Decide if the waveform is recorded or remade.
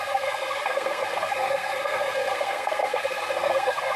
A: remade